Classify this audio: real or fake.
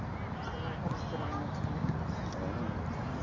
real